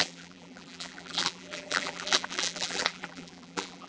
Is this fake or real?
fake